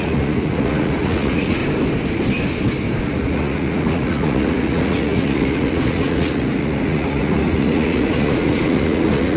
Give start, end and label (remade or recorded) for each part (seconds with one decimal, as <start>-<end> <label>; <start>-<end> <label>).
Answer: 0.0-1.6 remade; 1.6-3.0 recorded; 3.0-9.4 remade